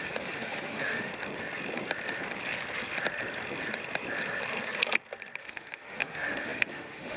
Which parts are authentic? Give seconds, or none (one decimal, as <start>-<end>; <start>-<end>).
1.1-5.4